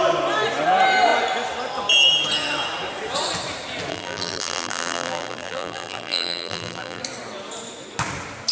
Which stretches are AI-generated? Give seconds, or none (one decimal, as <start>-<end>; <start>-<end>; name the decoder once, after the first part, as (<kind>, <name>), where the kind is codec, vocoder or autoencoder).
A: 3.9-7.0 (vocoder, BigVGAN v2)